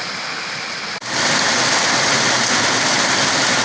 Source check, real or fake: real